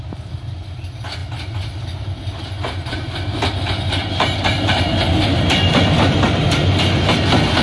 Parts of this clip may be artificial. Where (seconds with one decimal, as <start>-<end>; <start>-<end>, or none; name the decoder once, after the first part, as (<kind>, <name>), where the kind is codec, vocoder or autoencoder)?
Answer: none